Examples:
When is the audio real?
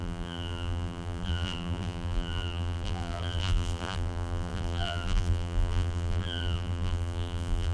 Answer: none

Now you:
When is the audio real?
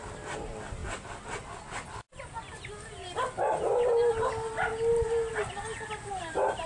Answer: 0.0-6.7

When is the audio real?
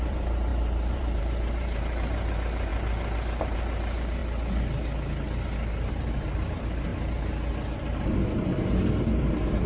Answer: 2.7-3.4; 4.2-5.9; 6.9-9.1